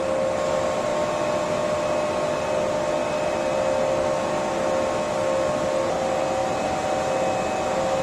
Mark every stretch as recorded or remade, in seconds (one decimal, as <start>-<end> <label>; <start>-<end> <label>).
0.0-8.0 recorded